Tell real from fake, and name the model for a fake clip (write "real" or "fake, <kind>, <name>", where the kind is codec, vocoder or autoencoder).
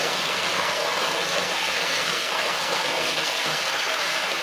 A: fake, codec, SNAC